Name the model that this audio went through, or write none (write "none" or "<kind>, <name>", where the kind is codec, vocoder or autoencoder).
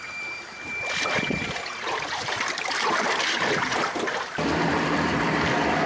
vocoder, BigVGAN v2